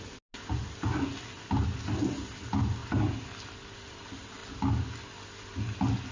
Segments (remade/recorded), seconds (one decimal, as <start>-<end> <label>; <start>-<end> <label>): 0.0-6.1 recorded